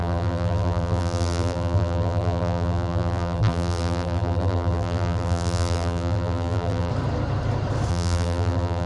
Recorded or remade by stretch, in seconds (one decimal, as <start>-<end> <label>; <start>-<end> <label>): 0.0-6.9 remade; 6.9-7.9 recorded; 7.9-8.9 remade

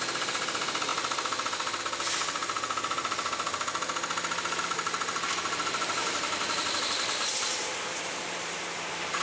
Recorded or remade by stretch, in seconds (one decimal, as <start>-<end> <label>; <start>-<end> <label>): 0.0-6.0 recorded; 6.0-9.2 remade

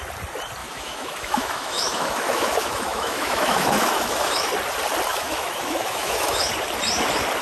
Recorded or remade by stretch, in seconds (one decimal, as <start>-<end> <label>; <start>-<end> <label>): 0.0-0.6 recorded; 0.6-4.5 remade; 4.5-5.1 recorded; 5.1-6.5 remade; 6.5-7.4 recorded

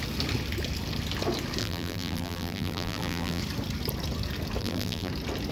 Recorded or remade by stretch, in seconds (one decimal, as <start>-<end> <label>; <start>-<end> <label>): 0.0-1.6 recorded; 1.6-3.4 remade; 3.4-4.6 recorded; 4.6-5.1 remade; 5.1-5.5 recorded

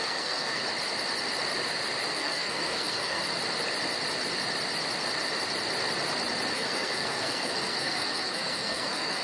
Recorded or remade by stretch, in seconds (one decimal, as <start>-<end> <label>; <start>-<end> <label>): 0.0-0.6 remade; 0.6-2.1 recorded; 2.1-3.2 remade; 3.2-6.5 recorded; 6.5-9.2 remade